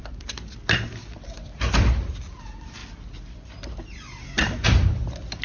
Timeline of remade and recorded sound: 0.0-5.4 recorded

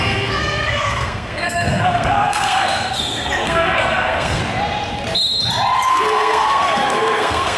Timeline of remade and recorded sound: 0.0-4.4 remade; 4.4-5.9 recorded; 5.9-7.6 remade

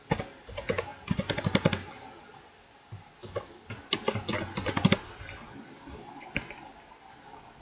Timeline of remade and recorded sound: 0.0-7.6 recorded

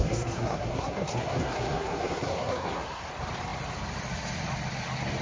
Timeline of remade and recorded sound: 0.0-3.1 remade; 3.1-5.2 recorded

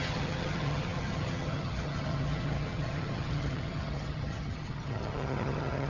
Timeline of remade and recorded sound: 0.0-5.9 remade

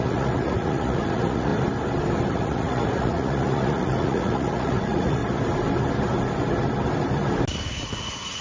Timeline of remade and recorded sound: 0.0-1.5 remade; 1.5-2.3 recorded; 2.3-5.2 remade; 5.2-7.7 recorded; 7.7-8.4 remade